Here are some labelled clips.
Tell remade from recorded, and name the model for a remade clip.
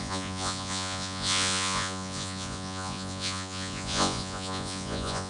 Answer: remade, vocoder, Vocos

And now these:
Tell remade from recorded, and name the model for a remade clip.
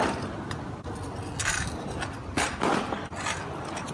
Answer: recorded